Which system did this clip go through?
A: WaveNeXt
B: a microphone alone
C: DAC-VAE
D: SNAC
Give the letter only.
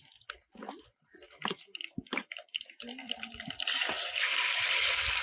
B